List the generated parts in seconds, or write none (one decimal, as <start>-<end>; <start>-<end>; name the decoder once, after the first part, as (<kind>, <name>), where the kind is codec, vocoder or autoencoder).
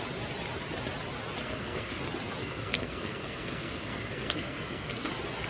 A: 1.4-2.0 (codec, SNAC); 2.4-5.1